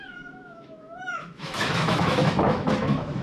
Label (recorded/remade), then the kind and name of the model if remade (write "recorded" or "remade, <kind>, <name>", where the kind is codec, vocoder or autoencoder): remade, autoencoder, DAC-VAE